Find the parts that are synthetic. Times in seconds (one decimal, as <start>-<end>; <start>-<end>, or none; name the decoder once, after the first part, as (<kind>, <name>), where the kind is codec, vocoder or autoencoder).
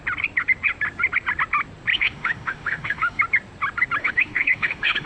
1.9-3.2 (autoencoder, DAC-VAE); 4.0-5.1